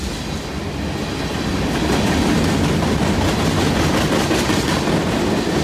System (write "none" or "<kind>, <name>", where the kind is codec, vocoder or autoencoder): none